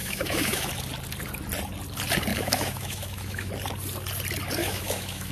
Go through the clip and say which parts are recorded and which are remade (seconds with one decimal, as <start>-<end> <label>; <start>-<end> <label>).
0.0-0.7 remade; 0.7-2.3 recorded; 2.3-3.5 remade; 3.5-4.6 recorded; 4.6-5.3 remade